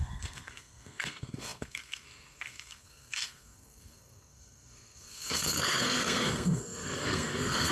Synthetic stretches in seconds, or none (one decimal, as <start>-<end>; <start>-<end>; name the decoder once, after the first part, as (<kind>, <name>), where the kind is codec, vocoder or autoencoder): 0.0-7.7 (codec, SNAC)